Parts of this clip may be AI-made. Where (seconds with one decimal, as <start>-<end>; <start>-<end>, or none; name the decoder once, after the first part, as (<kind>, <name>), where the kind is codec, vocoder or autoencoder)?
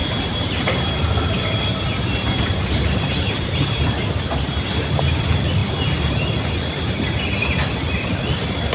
0.0-0.9 (vocoder, BigVGAN v2); 1.7-4.8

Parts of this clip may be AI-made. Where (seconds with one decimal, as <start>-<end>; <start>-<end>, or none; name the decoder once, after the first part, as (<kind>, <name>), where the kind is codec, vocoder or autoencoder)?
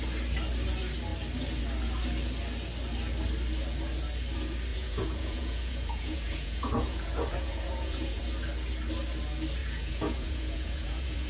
4.7-8.2 (vocoder, Vocos); 9.6-11.3